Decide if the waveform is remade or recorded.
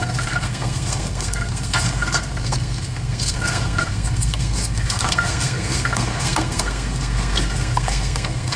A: remade